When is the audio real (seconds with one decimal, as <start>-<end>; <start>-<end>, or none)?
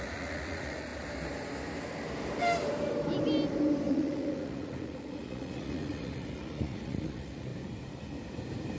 0.9-3.9; 7.5-8.8